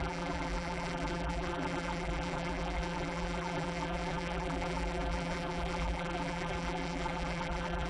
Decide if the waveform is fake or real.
fake